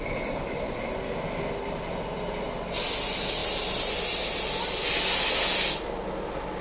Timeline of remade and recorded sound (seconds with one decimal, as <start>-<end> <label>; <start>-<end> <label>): 0.0-6.6 recorded